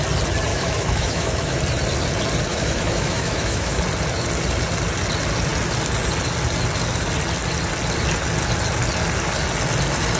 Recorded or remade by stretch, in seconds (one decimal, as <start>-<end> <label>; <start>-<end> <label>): 0.0-0.5 recorded; 0.5-1.6 remade; 1.6-2.5 recorded; 2.5-3.8 remade; 3.8-10.2 recorded